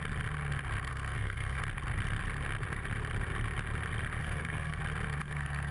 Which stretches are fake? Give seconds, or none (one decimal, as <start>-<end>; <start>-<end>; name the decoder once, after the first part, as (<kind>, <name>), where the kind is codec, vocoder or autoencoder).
0.9-1.6 (codec, SNAC); 4.2-4.8; 5.2-5.7